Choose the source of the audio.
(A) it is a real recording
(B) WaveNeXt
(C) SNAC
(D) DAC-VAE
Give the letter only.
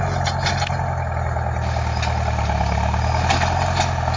A